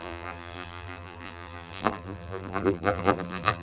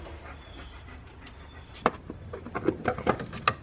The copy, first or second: first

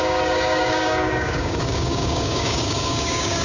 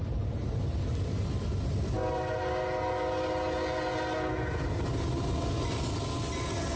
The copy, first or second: first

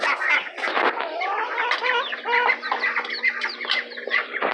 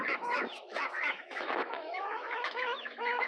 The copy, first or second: second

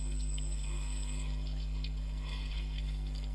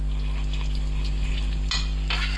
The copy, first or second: first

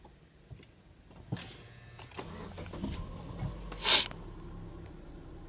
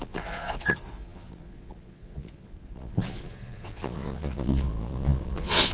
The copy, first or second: second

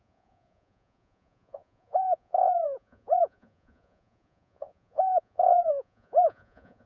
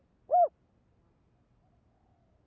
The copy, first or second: first